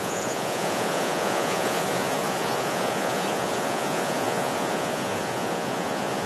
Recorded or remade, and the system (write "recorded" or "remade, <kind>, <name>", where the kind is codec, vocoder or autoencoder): remade, vocoder, Vocos